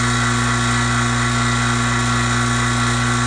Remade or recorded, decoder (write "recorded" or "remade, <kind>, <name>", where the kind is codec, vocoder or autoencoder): recorded